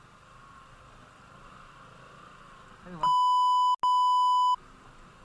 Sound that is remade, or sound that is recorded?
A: recorded